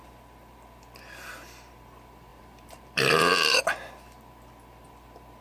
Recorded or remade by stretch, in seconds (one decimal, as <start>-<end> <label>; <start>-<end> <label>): 0.0-2.3 recorded; 2.3-3.6 remade; 3.6-5.4 recorded